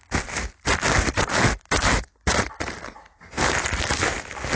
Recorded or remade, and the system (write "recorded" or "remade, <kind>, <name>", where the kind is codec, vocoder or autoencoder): recorded